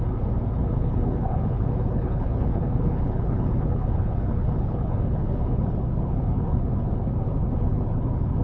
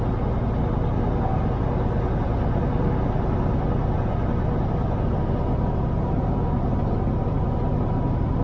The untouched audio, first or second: second